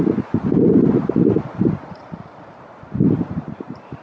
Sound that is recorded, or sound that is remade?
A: remade